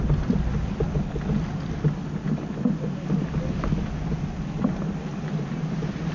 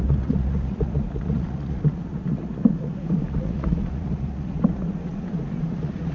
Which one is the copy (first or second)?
second